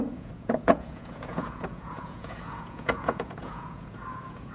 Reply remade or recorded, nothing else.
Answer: remade